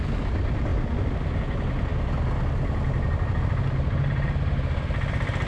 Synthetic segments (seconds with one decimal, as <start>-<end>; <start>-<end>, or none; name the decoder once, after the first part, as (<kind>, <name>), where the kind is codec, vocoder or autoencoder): none